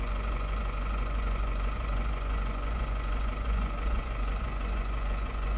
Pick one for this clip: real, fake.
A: fake